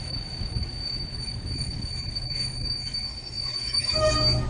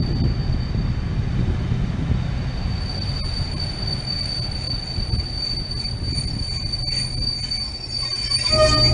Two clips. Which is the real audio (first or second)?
second